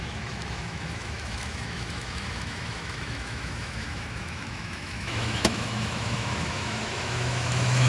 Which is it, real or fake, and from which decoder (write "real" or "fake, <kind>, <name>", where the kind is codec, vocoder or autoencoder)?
fake, autoencoder, DAC-VAE